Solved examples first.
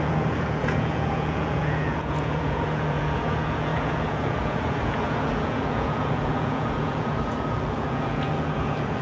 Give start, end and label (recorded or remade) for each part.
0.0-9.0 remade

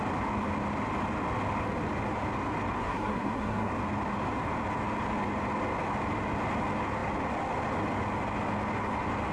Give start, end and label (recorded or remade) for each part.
0.0-2.8 recorded; 2.8-3.7 remade; 3.7-9.3 recorded

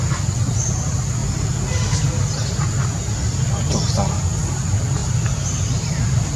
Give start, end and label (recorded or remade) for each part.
0.0-6.4 recorded

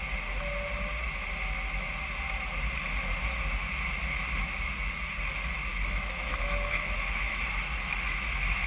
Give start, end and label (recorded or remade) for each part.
0.0-5.7 recorded; 5.7-8.7 remade